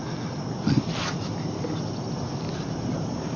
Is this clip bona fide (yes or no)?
yes